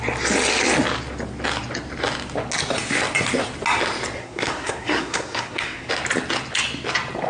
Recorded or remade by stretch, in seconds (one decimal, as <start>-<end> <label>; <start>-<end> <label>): 0.0-4.2 recorded; 4.2-5.9 remade; 5.9-7.3 recorded